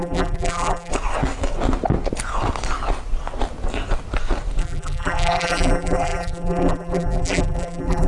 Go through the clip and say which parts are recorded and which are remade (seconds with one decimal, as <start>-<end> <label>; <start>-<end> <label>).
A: 0.0-0.9 remade; 0.9-4.6 recorded; 4.6-8.1 remade